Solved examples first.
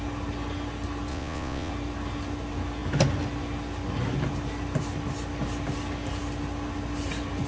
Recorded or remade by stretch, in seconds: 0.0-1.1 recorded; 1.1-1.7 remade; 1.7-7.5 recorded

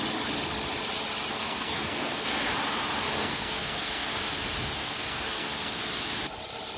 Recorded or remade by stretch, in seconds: 0.0-1.3 recorded; 1.3-2.3 remade; 2.3-3.2 recorded; 3.2-4.1 remade; 4.1-4.8 recorded; 4.8-5.8 remade; 5.8-6.8 recorded

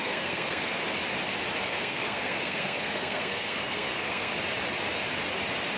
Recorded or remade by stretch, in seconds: 0.0-0.8 remade; 0.8-1.6 recorded; 1.6-4.3 remade; 4.3-5.8 recorded